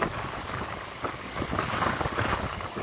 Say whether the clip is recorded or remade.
remade